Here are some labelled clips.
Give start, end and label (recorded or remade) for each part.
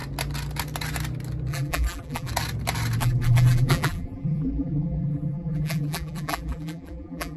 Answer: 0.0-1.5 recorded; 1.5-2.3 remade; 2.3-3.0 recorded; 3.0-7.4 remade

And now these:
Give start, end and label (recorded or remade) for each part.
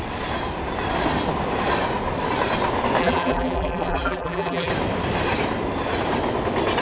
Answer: 0.0-3.0 recorded; 3.0-4.7 remade; 4.7-6.8 recorded